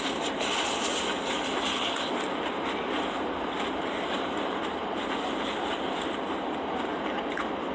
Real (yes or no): yes